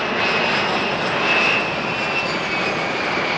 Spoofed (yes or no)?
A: no